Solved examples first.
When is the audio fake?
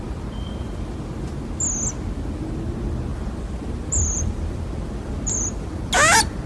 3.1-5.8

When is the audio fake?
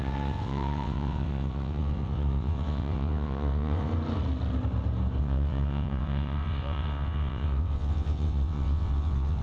0.0-3.9; 5.2-9.4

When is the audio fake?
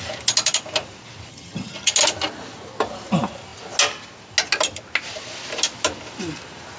1.3-1.9